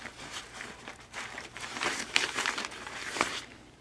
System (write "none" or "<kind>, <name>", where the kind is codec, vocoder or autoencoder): vocoder, BigVGAN v2